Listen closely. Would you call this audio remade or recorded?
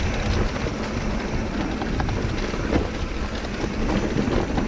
recorded